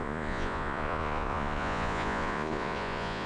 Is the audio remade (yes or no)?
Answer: yes